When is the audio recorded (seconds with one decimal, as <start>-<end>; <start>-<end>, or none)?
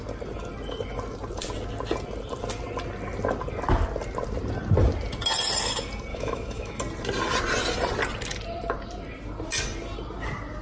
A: 0.0-6.1; 6.8-10.6